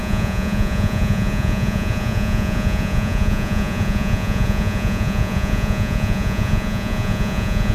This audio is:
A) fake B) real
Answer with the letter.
A